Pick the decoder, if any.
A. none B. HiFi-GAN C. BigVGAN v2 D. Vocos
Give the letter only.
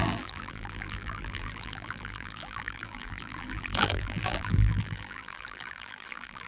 C